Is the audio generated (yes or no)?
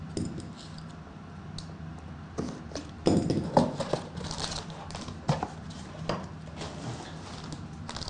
no